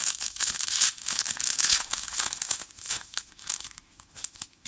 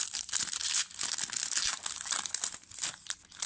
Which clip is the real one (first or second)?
second